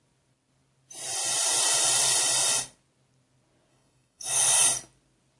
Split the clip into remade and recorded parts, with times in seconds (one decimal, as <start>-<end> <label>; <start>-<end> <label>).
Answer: 0.0-3.7 recorded; 3.7-4.4 remade; 4.4-5.4 recorded